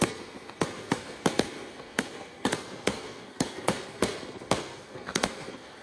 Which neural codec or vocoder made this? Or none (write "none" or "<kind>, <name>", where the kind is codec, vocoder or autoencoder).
codec, SNAC